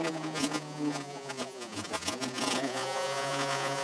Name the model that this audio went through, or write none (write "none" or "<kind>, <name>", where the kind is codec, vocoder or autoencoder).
vocoder, Vocos